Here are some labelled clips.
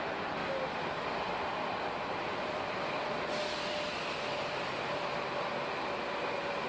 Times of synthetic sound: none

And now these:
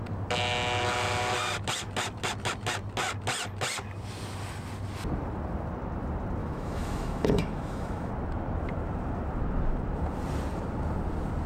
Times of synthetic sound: 6.4-8.1 (autoencoder, DAC-VAE)

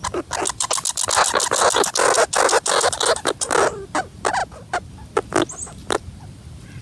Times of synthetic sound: none

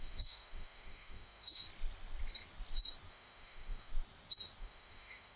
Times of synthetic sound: 0.0-1.6 (autoencoder, DAC-VAE); 3.1-3.9; 4.6-5.4

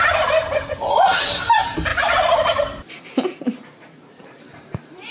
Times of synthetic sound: 0.0-0.4 (vocoder, BigVGAN v2); 1.2-5.1

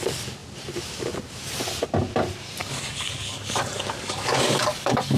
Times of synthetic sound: 2.6-5.2 (codec, DAC)

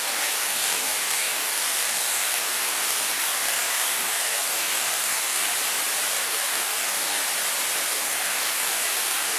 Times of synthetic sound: 0.0-5.5 (codec, DAC); 6.1-7.2; 7.9-9.4

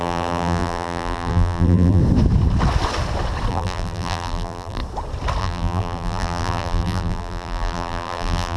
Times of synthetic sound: 0.0-2.0 (vocoder, BigVGAN v2); 3.5-4.8; 5.4-8.6